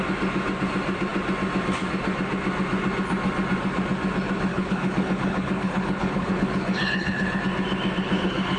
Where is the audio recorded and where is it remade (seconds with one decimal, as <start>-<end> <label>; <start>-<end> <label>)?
0.0-4.5 recorded; 4.5-7.4 remade; 7.4-8.0 recorded; 8.0-8.6 remade